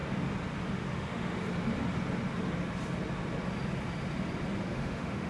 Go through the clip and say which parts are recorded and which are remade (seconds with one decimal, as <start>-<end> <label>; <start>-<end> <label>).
0.0-0.7 recorded; 0.7-1.4 remade; 1.4-4.6 recorded; 4.6-5.3 remade